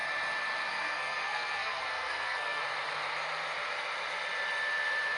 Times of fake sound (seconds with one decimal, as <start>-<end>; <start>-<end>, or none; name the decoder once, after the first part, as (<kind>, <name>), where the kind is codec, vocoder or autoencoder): 0.7-2.6 (codec, SNAC)